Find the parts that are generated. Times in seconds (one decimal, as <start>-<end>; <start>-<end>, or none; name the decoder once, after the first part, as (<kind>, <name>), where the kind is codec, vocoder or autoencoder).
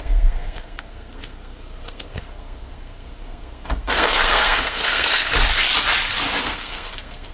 0.0-5.3 (codec, SNAC); 6.4-7.3